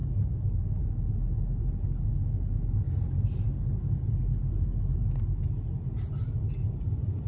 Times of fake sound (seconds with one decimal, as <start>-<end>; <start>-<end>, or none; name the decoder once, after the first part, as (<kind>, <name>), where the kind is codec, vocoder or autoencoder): none